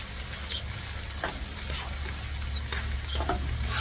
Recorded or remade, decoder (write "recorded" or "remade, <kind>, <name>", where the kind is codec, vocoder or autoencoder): recorded